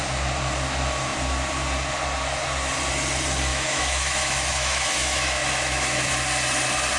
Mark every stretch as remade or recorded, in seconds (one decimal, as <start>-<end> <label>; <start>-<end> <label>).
0.0-3.5 recorded; 3.5-6.1 remade; 6.1-7.0 recorded